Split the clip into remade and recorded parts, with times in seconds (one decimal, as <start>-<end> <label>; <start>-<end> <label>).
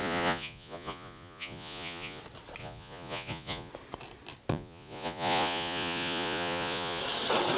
0.0-2.2 remade; 2.2-2.6 recorded; 2.6-3.7 remade; 3.7-4.5 recorded; 4.5-7.0 remade; 7.0-7.6 recorded